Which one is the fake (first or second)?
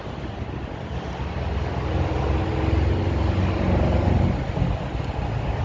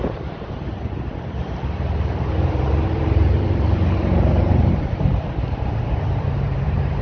second